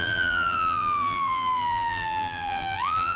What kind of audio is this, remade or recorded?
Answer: remade